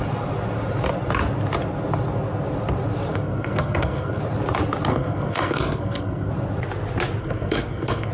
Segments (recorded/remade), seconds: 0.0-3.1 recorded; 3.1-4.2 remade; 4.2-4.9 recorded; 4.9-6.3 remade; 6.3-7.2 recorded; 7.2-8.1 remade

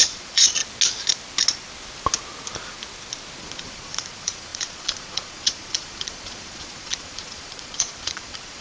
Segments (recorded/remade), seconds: 0.0-0.6 remade; 0.6-3.4 recorded; 3.4-8.6 remade

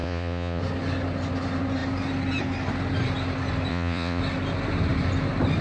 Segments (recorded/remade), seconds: 0.0-0.6 remade; 0.6-3.7 recorded; 3.7-4.2 remade; 4.2-5.6 recorded

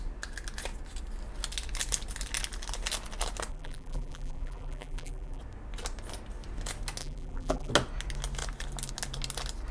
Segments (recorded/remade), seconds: 0.0-3.5 recorded; 3.5-5.4 remade; 5.4-7.0 recorded; 7.0-7.7 remade; 7.7-9.7 recorded

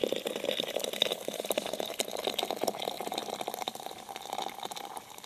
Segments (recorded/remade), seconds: 0.0-0.7 remade; 0.7-3.2 recorded; 3.2-4.3 remade; 4.3-5.3 recorded

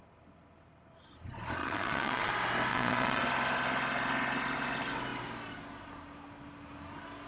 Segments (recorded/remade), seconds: 0.0-1.6 recorded; 1.6-2.3 remade; 2.3-2.7 recorded; 2.7-3.2 remade; 3.2-7.3 recorded

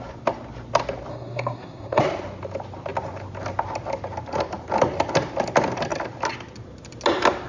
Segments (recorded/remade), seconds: 0.0-1.1 recorded; 1.1-2.0 remade; 2.0-7.5 recorded